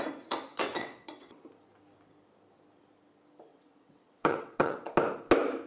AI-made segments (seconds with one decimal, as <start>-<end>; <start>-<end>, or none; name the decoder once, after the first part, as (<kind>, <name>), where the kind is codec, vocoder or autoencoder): 0.5-1.4 (vocoder, WaveNeXt); 3.5-4.9